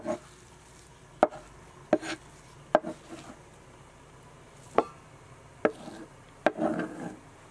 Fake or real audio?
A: real